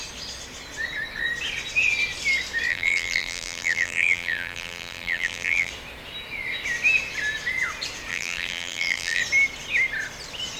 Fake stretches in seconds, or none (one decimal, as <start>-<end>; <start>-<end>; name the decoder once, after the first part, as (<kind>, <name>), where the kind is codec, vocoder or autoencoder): 2.7-5.7 (vocoder, BigVGAN v2); 8.1-9.2